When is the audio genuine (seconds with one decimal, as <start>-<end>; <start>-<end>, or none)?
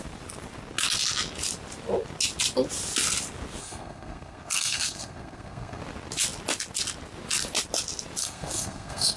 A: 0.0-3.6; 5.8-8.2